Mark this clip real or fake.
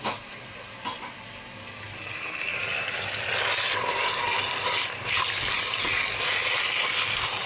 real